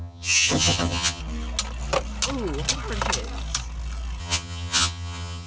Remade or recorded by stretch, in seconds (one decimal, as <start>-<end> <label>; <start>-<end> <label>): 0.0-1.2 remade; 1.2-4.2 recorded; 4.2-5.5 remade